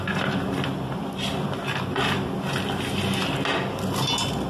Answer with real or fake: real